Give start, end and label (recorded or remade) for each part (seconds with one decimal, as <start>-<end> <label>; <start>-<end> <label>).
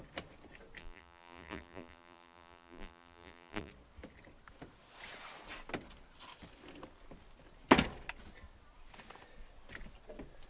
0.0-0.8 recorded; 0.8-3.7 remade; 3.7-10.5 recorded